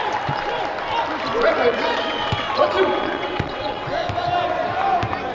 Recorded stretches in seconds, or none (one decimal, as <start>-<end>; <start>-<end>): 0.0-1.7; 3.9-5.3